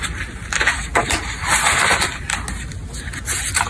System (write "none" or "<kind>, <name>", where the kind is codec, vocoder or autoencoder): none